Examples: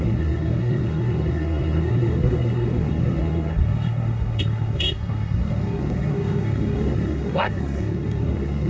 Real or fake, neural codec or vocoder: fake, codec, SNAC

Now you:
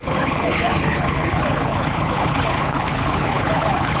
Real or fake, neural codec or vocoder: fake, codec, HILCodec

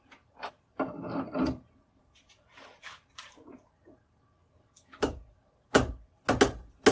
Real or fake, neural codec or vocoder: real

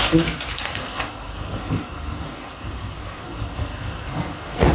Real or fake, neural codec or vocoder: fake, codec, SNAC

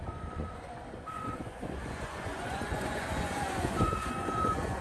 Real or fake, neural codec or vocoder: fake, vocoder, Vocos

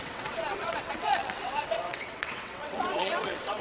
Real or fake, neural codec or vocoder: fake, vocoder, WaveNeXt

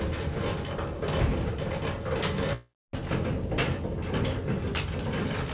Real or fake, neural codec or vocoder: real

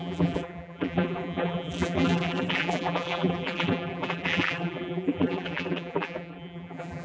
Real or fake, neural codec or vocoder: fake, vocoder, BigVGAN v2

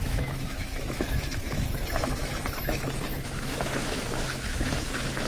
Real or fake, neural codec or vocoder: fake, autoencoder, DAC-VAE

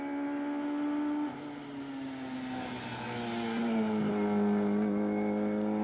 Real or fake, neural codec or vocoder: real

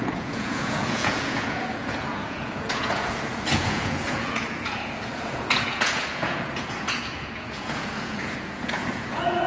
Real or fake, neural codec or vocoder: fake, vocoder, Vocos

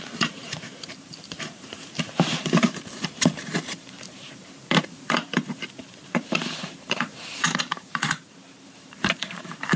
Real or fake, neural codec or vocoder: fake, vocoder, BigVGAN v2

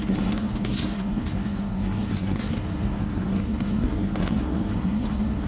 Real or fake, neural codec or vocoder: fake, codec, SNAC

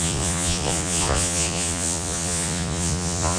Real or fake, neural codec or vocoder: fake, vocoder, Vocos